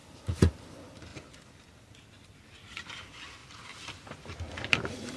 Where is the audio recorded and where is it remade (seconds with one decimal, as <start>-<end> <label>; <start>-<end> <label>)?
0.0-3.4 recorded; 3.4-5.2 remade

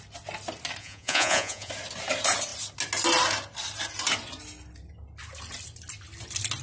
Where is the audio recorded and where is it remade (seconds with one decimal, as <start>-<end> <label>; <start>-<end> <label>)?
0.0-0.8 recorded; 0.8-1.7 remade; 1.7-6.6 recorded

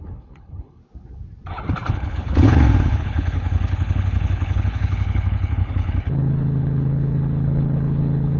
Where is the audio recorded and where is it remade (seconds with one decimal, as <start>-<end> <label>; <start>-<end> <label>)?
0.0-0.8 remade; 0.8-1.9 recorded; 1.9-8.4 remade

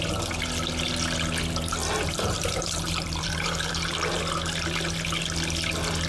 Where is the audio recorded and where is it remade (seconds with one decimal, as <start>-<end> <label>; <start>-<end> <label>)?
0.0-1.8 recorded; 1.8-4.2 remade; 4.2-6.1 recorded